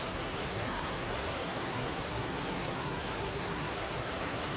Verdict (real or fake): fake